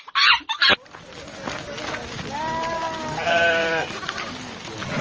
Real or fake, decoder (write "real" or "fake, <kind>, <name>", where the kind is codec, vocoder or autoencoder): real